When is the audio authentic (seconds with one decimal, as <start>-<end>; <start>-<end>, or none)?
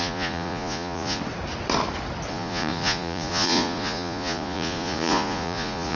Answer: 1.2-2.3